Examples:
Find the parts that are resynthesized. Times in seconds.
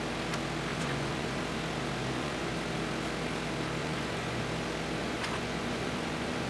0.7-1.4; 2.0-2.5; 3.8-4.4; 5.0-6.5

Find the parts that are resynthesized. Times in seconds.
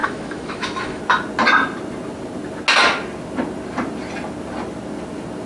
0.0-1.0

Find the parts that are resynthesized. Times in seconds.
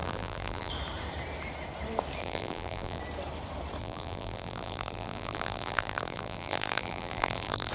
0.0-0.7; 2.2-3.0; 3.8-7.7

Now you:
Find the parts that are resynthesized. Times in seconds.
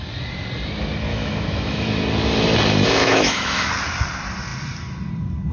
1.1-2.0; 3.0-3.7